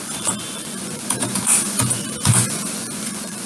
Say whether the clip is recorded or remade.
remade